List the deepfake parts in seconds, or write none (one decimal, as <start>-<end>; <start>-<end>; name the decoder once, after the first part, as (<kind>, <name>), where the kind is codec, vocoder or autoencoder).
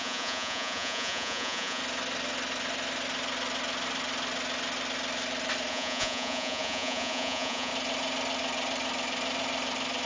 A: 0.0-1.8 (vocoder, Vocos); 5.7-7.7